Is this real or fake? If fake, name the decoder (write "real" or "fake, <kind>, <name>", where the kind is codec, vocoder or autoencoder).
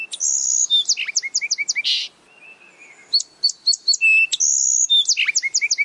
real